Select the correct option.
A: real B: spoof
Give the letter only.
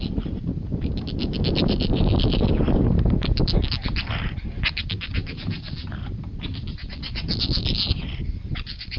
B